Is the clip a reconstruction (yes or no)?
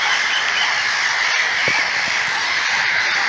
no